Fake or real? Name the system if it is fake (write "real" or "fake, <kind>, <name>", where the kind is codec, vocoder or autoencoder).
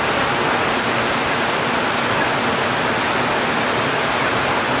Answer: real